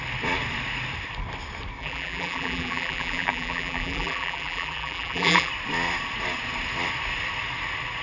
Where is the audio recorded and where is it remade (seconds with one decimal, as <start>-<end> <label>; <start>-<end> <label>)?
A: 0.0-1.8 recorded; 1.8-5.5 remade; 5.5-8.0 recorded